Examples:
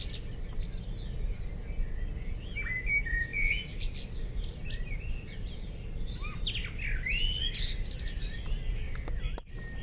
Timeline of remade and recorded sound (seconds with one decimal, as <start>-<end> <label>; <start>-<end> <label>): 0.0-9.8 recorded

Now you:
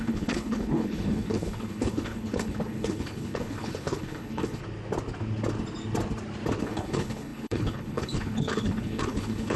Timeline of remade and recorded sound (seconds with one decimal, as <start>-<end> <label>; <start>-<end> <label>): 0.0-4.6 remade; 4.6-6.6 recorded; 6.6-9.6 remade

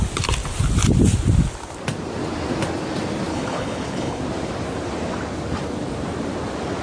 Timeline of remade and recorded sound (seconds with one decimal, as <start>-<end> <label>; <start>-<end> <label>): 0.0-3.3 recorded; 3.3-4.2 remade; 4.2-6.8 recorded